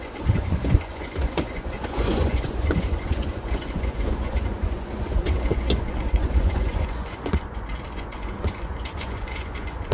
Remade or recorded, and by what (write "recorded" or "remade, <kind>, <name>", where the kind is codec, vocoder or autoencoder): remade, vocoder, Vocos